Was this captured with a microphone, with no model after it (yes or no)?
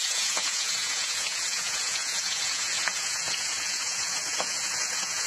no